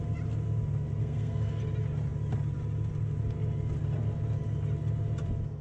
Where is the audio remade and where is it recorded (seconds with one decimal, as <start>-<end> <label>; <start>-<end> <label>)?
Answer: 0.0-1.0 recorded; 1.0-1.6 remade; 1.6-5.6 recorded